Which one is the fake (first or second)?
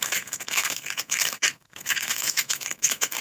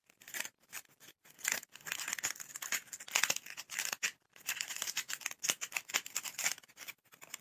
first